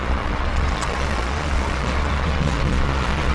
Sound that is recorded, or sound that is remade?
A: remade